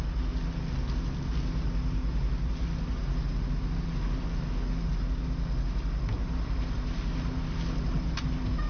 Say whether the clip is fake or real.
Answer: real